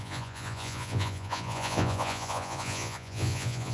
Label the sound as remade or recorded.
remade